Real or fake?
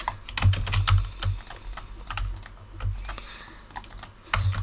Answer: real